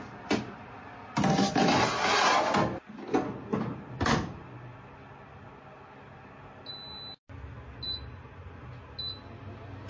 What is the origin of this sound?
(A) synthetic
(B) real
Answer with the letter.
B